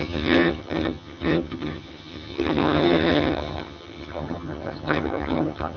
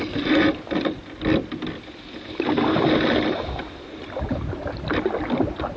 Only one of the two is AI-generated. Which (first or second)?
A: first